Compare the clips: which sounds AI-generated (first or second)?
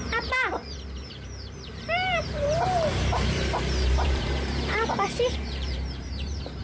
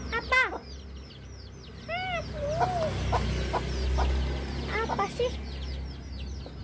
first